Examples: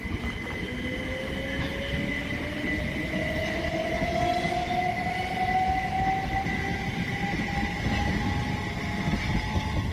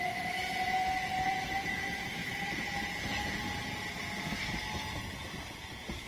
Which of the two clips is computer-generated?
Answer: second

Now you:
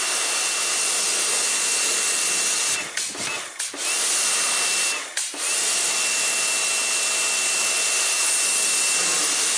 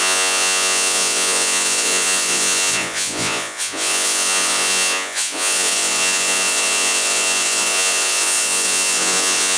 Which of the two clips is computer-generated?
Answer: second